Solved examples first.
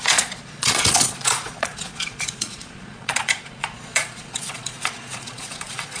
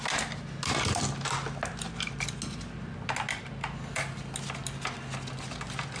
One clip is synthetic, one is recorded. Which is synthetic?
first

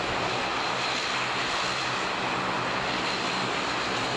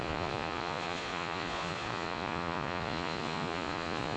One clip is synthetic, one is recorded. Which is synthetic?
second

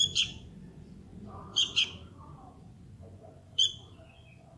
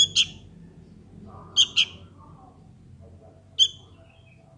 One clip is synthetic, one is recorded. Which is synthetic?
first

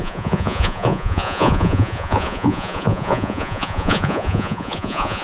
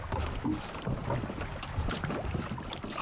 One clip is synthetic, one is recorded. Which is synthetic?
first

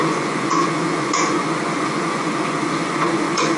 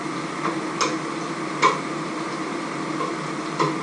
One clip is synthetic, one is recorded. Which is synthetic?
first